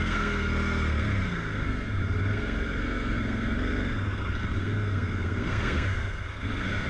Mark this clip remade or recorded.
remade